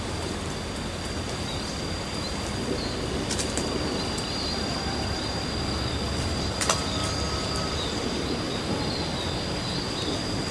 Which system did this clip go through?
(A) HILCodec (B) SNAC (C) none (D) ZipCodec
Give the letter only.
C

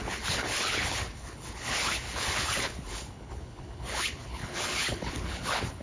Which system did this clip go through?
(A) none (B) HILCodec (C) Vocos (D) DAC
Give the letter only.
B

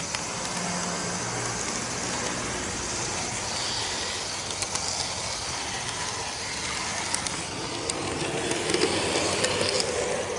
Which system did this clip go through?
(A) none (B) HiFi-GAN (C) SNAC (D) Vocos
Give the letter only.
A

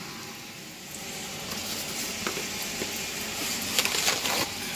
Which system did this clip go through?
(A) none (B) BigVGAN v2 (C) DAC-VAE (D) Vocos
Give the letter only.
A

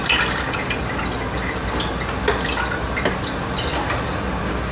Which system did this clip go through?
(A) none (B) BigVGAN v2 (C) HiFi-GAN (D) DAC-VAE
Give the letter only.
A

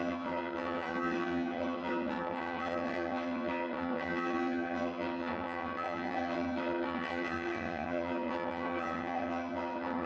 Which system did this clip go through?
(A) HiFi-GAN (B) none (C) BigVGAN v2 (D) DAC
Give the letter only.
A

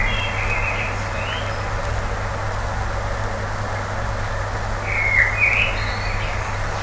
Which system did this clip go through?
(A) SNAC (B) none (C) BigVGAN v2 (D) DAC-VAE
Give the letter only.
B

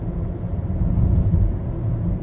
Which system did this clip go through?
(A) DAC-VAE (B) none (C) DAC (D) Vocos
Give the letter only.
D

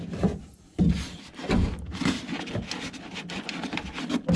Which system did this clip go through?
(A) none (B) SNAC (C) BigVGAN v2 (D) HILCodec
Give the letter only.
A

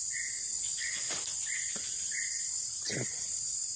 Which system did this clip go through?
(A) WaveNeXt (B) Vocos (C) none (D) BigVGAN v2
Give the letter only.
C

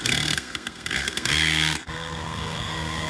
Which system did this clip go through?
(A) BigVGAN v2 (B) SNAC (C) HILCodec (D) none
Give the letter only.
B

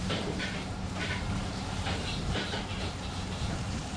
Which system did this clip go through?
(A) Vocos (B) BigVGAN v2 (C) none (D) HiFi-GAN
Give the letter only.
B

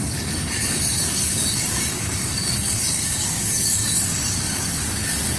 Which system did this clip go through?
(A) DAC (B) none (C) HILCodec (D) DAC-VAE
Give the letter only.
A